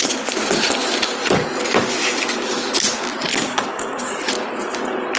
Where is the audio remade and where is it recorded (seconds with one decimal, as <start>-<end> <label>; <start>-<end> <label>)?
0.0-3.3 recorded; 3.3-4.1 remade; 4.1-5.2 recorded